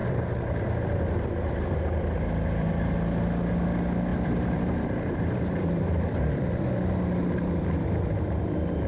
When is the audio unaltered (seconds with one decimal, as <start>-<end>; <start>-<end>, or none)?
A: 1.8-4.1; 8.4-8.9